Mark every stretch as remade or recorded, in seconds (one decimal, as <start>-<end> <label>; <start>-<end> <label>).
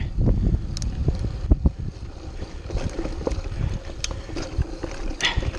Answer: 0.0-5.6 recorded